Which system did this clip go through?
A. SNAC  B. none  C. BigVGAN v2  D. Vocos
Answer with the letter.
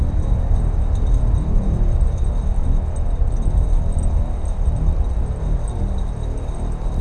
B